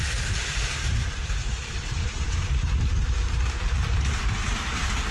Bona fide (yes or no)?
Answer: no